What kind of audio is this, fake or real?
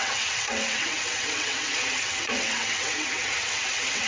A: fake